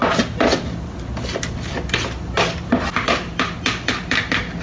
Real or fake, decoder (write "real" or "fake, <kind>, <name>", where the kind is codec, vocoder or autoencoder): real